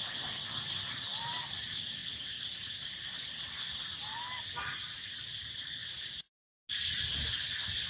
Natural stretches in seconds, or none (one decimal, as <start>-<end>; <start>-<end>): 0.0-1.1; 1.6-2.0; 3.5-7.9